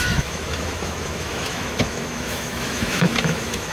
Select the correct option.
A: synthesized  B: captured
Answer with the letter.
A